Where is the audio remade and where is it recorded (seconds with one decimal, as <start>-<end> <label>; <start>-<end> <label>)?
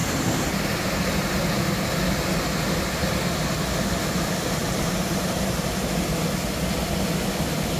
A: 0.0-1.0 remade; 1.0-4.6 recorded; 4.6-5.9 remade; 5.9-7.8 recorded